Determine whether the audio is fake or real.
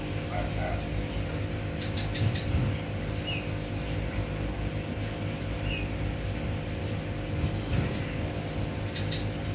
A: real